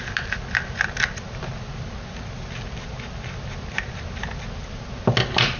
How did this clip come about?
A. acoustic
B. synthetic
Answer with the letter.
A